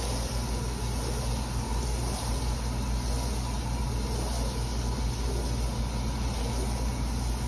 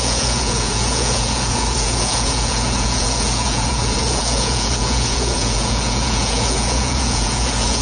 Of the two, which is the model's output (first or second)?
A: second